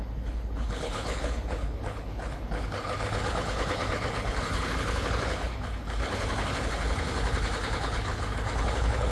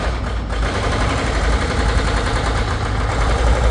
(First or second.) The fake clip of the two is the first